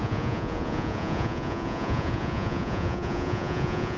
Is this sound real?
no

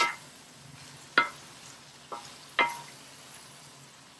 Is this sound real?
yes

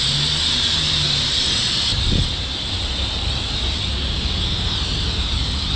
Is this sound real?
yes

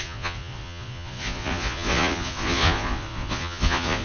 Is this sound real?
no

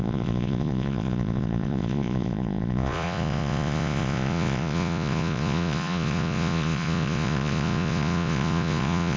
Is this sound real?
no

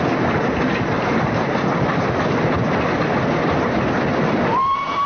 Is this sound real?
yes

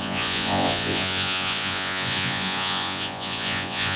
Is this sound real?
no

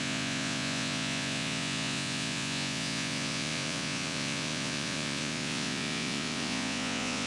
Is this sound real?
no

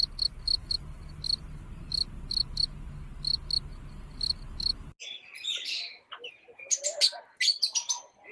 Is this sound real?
yes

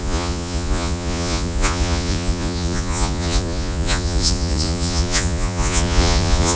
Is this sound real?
no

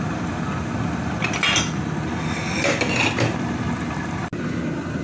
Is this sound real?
yes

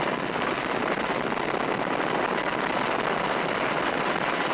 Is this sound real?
yes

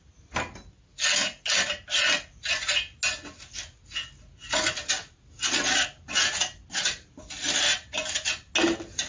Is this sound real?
yes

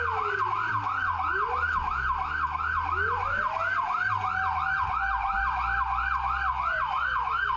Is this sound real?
yes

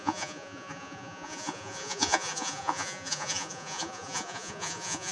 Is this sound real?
no